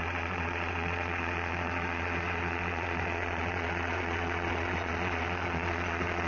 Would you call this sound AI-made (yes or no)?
yes